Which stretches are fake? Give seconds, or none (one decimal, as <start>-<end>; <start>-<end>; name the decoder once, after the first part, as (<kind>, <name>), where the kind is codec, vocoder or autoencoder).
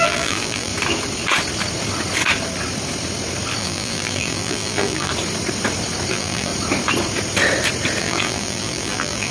0.0-0.7 (vocoder, BigVGAN v2); 3.6-5.1; 6.1-6.5; 8.0-9.3